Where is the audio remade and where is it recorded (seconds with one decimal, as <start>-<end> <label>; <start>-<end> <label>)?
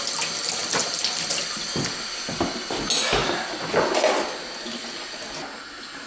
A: 0.0-0.6 recorded; 0.6-1.3 remade; 1.3-6.1 recorded